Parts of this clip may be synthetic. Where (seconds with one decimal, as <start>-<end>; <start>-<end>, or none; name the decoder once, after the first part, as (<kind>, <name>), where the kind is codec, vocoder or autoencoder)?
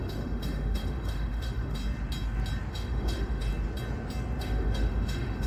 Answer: 0.0-1.8 (autoencoder, DAC-VAE); 2.7-3.5; 4.4-5.5